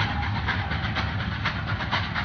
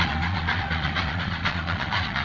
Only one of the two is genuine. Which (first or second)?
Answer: first